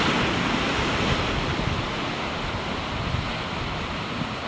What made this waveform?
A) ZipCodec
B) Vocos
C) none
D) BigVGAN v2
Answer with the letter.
C